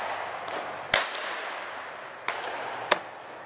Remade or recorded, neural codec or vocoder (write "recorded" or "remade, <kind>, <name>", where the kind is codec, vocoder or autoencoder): recorded